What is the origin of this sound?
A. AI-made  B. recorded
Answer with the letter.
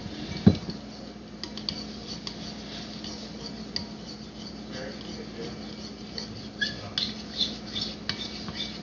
B